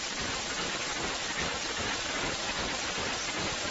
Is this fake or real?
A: fake